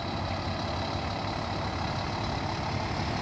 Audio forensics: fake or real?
real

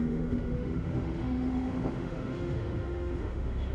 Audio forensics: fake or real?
fake